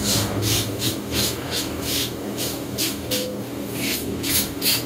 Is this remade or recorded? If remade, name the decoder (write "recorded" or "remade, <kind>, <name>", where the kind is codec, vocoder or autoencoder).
remade, codec, DAC